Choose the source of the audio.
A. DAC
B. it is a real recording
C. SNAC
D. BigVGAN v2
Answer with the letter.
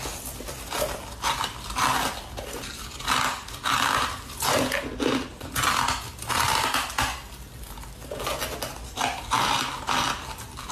B